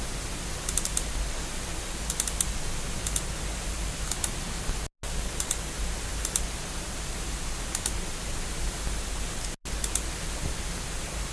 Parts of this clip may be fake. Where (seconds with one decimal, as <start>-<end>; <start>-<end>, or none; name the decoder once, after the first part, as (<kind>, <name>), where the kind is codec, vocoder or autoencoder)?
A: none